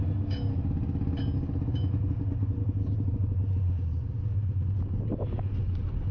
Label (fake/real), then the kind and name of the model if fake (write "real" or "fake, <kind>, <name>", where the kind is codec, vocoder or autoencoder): real